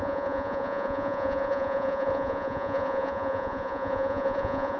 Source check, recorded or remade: remade